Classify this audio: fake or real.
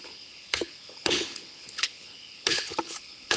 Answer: fake